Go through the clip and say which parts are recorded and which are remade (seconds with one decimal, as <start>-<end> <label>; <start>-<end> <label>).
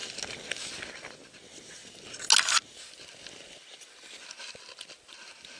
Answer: 0.0-5.6 recorded